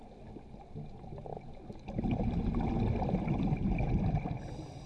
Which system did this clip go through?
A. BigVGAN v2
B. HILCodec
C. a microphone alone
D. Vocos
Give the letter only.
C